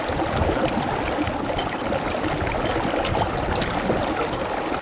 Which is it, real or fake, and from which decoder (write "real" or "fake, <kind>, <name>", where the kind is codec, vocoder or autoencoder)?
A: real